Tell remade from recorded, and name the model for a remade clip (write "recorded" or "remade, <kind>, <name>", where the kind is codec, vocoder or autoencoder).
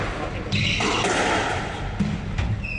recorded